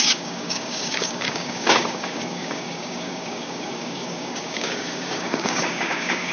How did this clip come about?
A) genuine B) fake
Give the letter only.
B